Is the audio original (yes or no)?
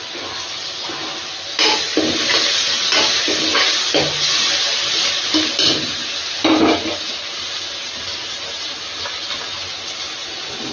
yes